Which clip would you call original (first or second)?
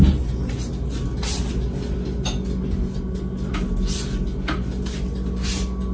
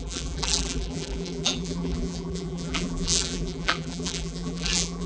first